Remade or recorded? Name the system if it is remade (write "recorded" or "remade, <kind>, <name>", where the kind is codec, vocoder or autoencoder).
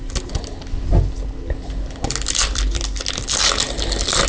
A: recorded